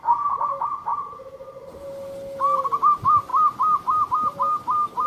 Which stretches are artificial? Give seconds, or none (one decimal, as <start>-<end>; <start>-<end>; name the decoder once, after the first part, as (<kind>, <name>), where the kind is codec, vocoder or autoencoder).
none

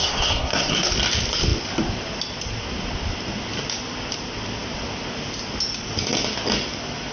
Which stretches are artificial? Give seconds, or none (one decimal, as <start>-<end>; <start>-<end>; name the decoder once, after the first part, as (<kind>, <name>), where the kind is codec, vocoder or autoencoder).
0.0-0.9 (codec, SNAC)

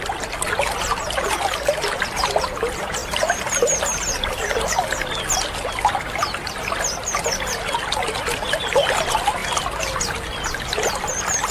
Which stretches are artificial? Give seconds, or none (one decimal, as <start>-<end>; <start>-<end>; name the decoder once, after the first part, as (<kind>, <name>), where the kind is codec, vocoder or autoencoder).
none